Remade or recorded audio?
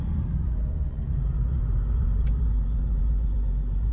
remade